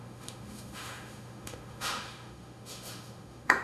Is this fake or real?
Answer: fake